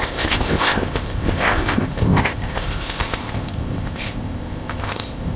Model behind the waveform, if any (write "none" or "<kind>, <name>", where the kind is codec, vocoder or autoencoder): codec, ZipCodec